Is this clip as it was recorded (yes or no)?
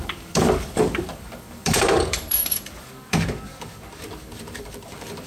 no